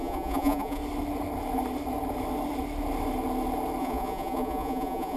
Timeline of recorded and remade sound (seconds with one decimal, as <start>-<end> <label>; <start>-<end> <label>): 0.0-0.8 remade; 0.8-3.8 recorded; 3.8-5.2 remade